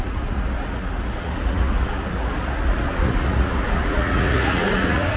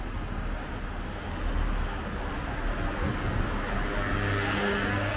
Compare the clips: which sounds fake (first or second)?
first